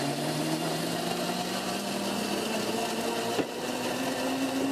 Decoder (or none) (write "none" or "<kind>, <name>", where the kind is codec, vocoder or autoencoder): none